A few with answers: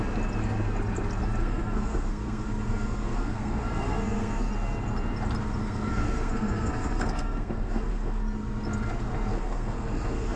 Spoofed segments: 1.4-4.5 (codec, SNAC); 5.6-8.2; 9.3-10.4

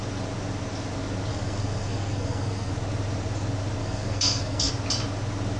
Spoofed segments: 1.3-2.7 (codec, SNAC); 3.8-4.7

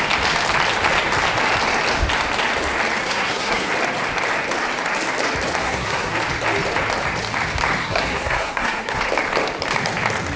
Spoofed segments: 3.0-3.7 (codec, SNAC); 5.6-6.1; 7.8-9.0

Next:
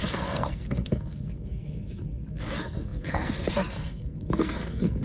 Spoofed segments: 0.0-5.0 (codec, SNAC)

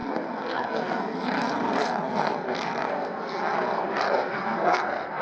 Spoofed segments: 0.0-5.2 (codec, SNAC)

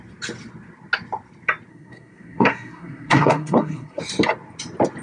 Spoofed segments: 1.7-4.0 (codec, SNAC)

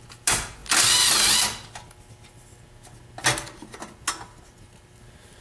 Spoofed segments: none